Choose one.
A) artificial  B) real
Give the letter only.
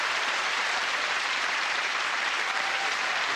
A